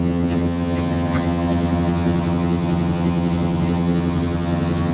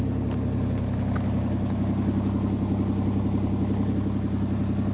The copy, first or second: first